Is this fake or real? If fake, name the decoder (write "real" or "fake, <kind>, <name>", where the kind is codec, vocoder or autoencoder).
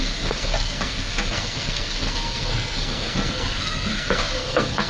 fake, codec, SNAC